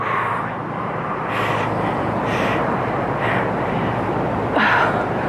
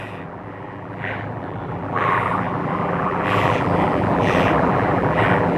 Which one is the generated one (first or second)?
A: second